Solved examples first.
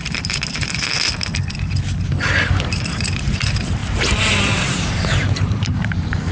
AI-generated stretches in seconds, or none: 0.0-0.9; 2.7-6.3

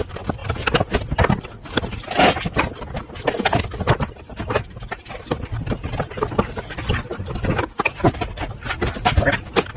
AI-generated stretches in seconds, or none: none

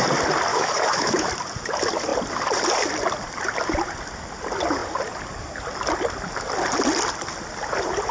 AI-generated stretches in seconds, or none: 0.5-1.3

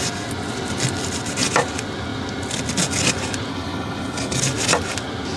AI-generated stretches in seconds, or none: 3.5-4.4

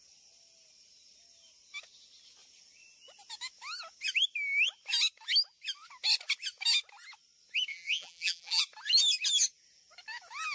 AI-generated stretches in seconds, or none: 7.7-8.6

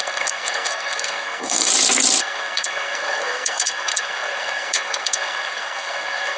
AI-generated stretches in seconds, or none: 0.0-1.7; 2.2-6.4